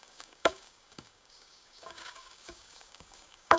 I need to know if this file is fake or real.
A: fake